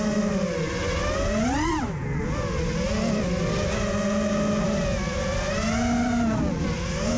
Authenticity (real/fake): real